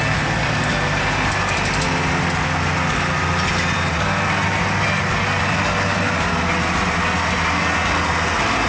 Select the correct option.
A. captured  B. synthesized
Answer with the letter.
A